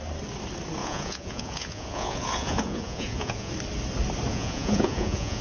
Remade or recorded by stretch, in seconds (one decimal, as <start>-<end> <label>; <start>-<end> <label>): 0.0-0.8 recorded; 0.8-3.5 remade; 3.5-4.3 recorded; 4.3-5.4 remade